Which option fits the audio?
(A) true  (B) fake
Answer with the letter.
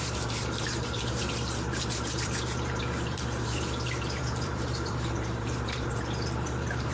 B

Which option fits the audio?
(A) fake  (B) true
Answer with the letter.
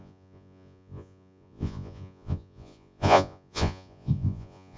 A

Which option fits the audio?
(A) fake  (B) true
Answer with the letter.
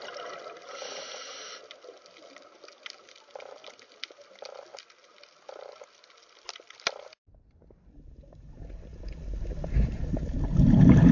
B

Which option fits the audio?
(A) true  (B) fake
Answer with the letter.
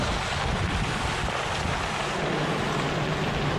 A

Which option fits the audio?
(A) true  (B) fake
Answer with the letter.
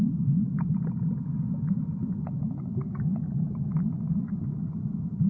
A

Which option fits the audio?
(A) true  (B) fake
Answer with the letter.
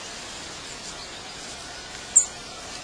A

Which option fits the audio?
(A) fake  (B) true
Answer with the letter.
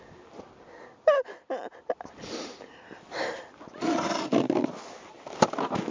B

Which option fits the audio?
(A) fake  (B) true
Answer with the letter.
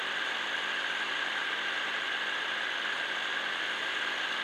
B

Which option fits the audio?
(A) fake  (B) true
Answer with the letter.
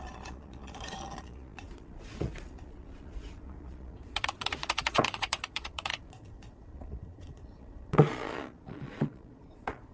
A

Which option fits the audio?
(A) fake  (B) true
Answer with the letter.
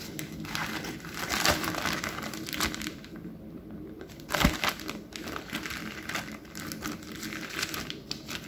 B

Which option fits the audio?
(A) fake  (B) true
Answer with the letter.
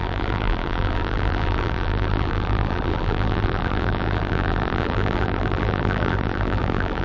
A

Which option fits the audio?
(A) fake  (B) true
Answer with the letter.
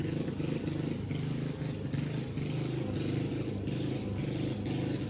B